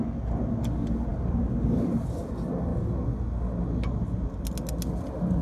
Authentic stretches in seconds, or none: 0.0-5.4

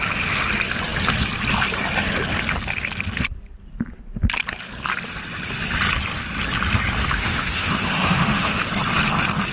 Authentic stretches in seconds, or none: 0.0-7.0; 8.6-9.5

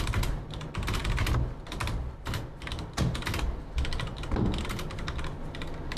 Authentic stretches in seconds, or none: 0.0-6.0

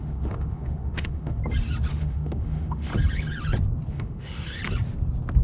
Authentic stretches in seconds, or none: 1.4-1.9; 2.9-3.9; 4.6-5.4

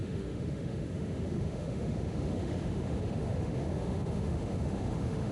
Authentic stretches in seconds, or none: none

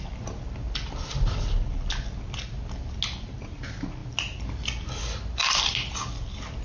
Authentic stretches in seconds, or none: 0.0-6.6